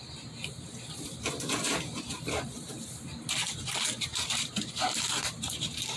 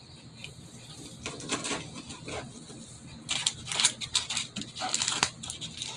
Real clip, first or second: second